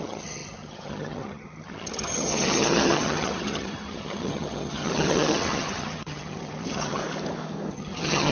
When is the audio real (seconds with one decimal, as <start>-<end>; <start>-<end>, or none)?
7.0-7.7